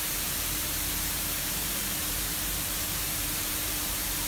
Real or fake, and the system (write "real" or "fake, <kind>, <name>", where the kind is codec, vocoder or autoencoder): fake, vocoder, BigVGAN v2